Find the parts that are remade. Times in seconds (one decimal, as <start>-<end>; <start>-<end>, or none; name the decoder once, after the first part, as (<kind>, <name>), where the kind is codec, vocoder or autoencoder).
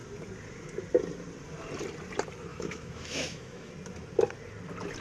2.5-3.7 (autoencoder, DAC-VAE)